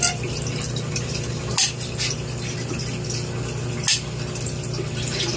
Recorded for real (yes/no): yes